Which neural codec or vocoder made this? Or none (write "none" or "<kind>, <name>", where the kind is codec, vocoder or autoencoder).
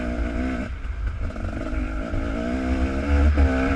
none